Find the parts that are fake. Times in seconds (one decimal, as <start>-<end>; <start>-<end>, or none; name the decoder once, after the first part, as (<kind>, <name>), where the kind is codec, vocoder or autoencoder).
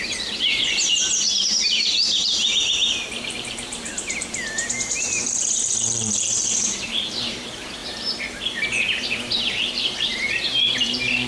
0.0-11.3 (vocoder, BigVGAN v2)